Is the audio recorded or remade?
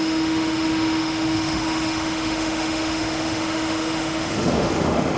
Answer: remade